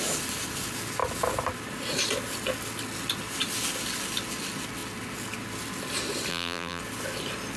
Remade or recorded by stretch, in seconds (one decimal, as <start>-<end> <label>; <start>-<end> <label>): 0.0-6.3 recorded; 6.3-6.8 remade; 6.8-7.6 recorded